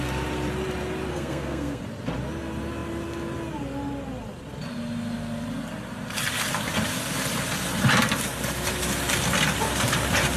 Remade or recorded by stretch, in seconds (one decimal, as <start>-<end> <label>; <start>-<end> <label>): 0.0-1.1 recorded; 1.1-1.8 remade; 1.8-10.4 recorded